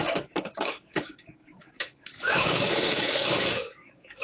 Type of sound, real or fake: fake